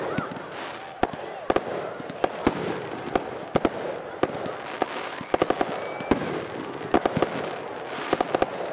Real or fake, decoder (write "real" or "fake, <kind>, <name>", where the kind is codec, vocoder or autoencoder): real